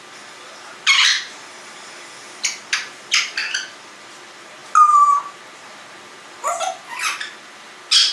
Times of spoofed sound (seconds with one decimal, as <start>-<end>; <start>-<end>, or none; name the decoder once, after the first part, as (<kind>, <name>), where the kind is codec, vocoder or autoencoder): none